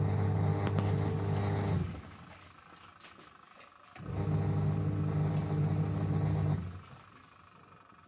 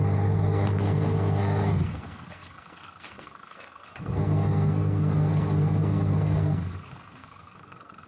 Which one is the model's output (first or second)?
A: second